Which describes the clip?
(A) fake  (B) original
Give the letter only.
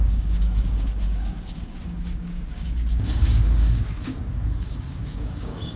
A